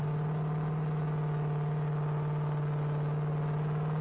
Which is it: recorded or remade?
recorded